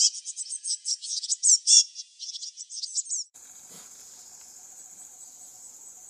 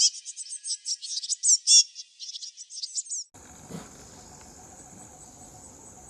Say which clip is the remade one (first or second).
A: first